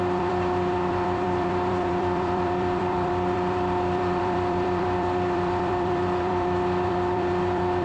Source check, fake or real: fake